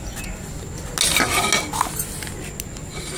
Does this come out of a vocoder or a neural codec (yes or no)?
no